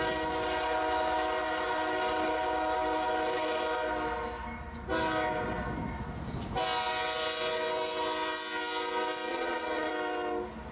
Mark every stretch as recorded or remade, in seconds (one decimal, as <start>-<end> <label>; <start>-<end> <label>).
0.0-9.3 recorded; 9.3-9.9 remade; 9.9-10.7 recorded